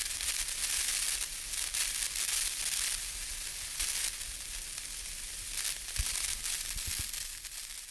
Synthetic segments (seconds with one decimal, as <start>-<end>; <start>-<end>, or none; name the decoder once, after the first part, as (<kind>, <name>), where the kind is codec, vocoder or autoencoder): none